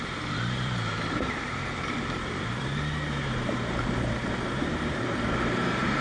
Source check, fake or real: fake